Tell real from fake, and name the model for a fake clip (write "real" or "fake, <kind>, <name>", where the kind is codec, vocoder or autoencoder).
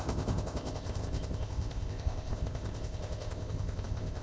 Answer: fake, codec, ZipCodec